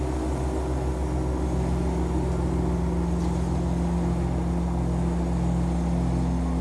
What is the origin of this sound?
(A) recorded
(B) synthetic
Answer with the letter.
A